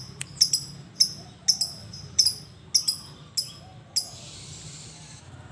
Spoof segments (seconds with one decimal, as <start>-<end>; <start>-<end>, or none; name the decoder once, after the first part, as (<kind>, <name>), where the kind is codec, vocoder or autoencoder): 1.8-2.4 (vocoder, BigVGAN v2)